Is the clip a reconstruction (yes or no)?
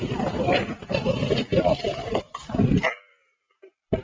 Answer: no